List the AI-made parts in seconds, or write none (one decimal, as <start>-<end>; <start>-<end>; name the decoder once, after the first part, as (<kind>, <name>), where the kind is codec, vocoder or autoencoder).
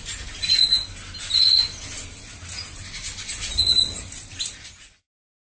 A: 2.3-4.7 (vocoder, BigVGAN v2)